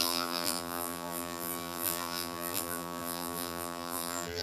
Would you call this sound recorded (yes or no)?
no